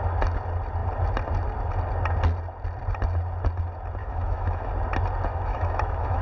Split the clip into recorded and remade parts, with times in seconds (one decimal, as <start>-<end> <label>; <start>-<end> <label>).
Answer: 0.0-4.0 recorded; 4.0-4.7 remade; 4.7-5.3 recorded; 5.3-6.2 remade